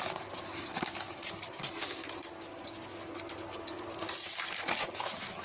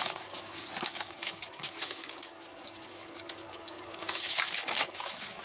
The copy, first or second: second